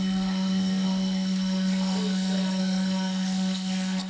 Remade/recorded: remade